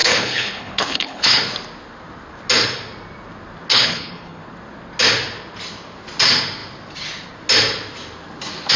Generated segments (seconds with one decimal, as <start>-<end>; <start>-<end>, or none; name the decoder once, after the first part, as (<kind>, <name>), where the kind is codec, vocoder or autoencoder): 0.0-1.4 (codec, HILCodec); 3.7-4.4